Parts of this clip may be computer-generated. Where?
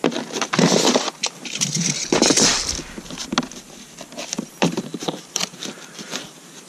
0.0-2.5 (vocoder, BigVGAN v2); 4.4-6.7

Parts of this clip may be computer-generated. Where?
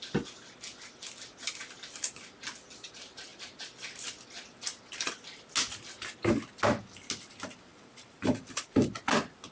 7.7-8.9 (vocoder, BigVGAN v2)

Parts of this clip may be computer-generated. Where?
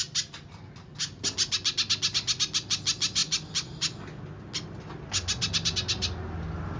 none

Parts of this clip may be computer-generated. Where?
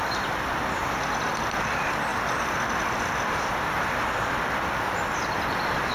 0.0-2.1 (vocoder, BigVGAN v2)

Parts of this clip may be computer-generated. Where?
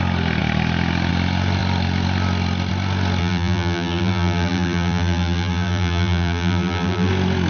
3.2-7.1 (vocoder, BigVGAN v2)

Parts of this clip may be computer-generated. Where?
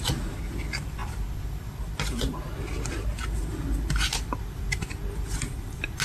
none